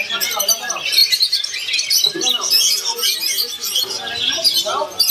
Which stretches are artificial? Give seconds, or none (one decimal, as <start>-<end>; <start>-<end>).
none